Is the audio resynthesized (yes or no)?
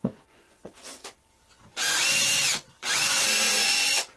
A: yes